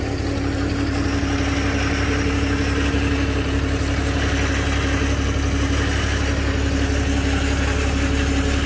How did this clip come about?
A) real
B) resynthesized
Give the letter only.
A